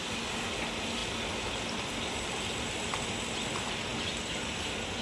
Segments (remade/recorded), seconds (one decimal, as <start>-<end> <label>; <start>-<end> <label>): 0.0-5.0 recorded